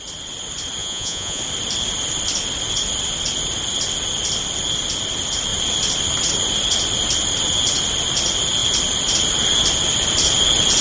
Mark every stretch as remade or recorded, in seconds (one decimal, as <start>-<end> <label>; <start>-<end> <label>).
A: 0.0-0.8 recorded; 0.8-1.4 remade; 1.4-10.8 recorded